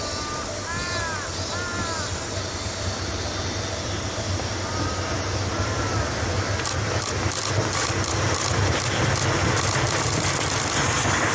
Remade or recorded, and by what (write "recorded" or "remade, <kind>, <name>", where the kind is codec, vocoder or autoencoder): recorded